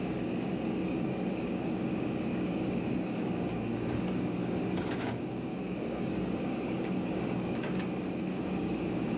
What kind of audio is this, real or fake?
fake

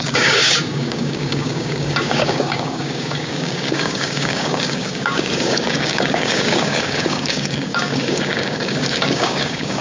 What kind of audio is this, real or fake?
fake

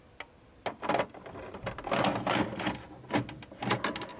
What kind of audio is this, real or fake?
real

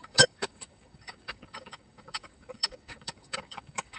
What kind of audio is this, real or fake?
fake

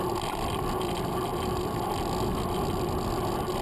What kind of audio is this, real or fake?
real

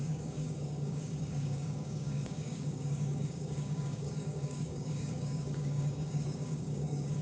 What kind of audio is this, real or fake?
fake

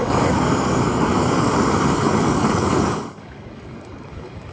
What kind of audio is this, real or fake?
fake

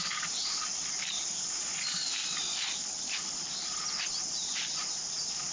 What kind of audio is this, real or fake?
real